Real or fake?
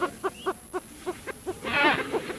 real